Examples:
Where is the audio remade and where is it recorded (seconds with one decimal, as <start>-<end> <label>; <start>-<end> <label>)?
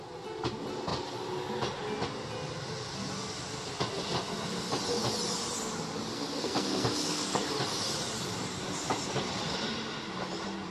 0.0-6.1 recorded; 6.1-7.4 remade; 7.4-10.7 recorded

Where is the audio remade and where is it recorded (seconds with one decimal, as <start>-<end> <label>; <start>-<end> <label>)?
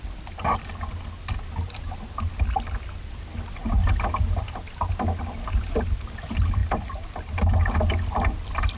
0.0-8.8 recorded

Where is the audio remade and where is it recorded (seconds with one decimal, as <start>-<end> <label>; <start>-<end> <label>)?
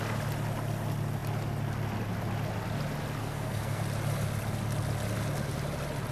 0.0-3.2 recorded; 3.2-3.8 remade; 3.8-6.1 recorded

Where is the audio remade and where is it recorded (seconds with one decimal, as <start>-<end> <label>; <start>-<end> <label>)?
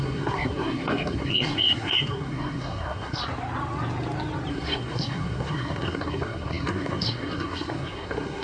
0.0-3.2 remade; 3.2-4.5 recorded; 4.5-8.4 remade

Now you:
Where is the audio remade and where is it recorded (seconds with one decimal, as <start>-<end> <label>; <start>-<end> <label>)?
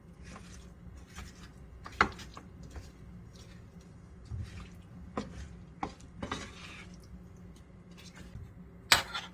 0.0-9.3 recorded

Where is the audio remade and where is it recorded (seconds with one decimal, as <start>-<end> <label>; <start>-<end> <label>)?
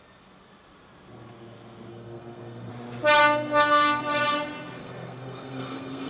0.0-1.9 recorded; 1.9-2.7 remade; 2.7-3.2 recorded; 3.2-4.0 remade; 4.0-4.8 recorded; 4.8-6.1 remade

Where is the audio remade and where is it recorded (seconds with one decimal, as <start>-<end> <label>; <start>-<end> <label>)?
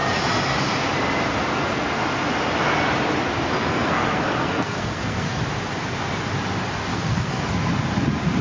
0.0-3.6 recorded; 3.6-5.4 remade; 5.4-6.9 recorded; 6.9-7.4 remade; 7.4-8.4 recorded